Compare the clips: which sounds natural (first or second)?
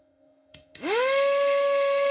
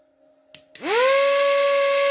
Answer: second